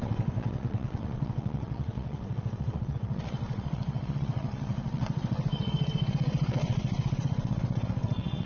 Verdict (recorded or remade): remade